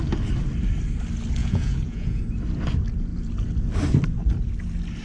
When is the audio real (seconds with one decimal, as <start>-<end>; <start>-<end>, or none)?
0.0-1.4; 2.2-5.0